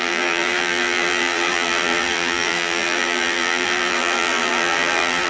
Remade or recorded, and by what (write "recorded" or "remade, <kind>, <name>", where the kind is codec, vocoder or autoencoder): remade, vocoder, BigVGAN v2